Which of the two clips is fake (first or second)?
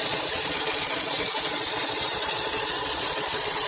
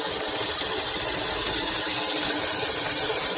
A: first